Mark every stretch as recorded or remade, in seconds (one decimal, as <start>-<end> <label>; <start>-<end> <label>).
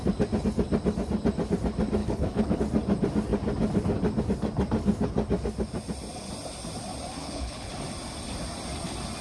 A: 0.0-2.0 recorded; 2.0-2.6 remade; 2.6-7.2 recorded; 7.2-7.7 remade; 7.7-9.2 recorded